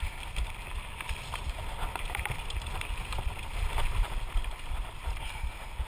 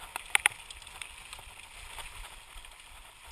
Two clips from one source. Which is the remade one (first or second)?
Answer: first